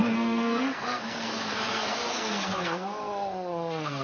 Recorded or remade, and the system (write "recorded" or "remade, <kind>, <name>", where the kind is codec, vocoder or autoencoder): remade, codec, SNAC